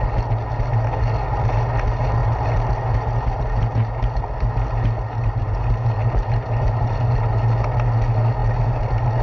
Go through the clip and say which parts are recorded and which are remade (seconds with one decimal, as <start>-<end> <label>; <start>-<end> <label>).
0.0-9.2 recorded